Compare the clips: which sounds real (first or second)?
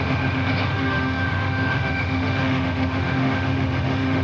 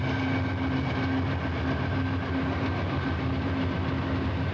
second